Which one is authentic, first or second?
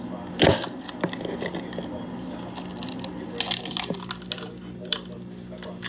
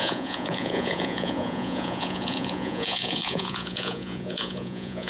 first